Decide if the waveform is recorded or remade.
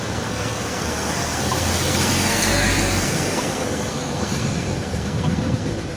remade